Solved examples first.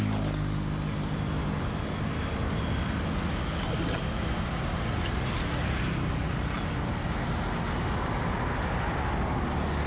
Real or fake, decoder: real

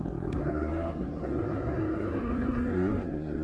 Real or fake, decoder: fake, codec, SNAC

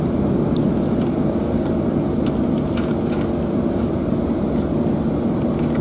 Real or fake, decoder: real